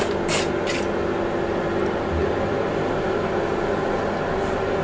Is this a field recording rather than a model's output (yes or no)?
yes